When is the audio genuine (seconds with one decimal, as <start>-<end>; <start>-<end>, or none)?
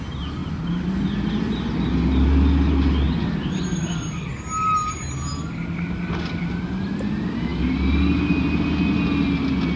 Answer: 0.0-9.8